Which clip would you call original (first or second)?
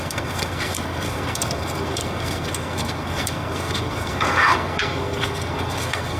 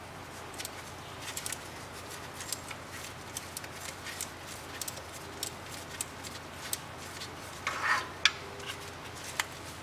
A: second